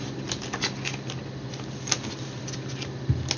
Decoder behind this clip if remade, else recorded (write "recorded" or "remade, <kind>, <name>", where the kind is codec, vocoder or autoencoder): recorded